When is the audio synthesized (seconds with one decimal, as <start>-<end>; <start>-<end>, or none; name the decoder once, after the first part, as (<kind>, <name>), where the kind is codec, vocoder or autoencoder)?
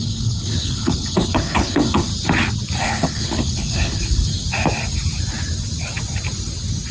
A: 0.0-2.1 (codec, HILCodec); 2.8-4.3